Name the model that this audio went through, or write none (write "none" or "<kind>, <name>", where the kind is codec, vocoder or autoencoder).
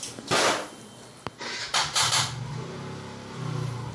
none